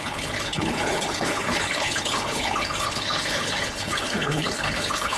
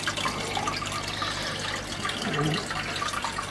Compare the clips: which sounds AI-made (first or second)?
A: first